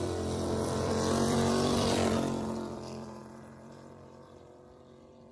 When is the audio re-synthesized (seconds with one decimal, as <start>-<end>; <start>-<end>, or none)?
0.0-5.3